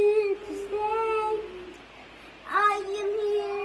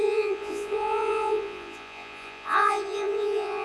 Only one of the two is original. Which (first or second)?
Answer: first